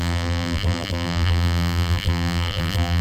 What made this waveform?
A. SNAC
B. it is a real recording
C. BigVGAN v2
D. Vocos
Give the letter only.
C